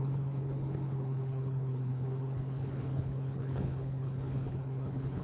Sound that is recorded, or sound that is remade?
remade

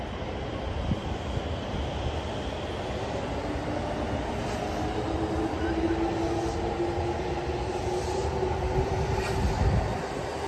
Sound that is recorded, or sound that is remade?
recorded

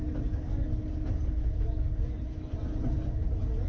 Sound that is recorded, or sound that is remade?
recorded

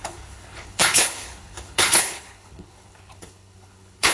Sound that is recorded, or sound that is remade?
remade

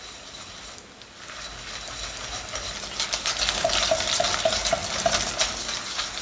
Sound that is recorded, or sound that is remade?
recorded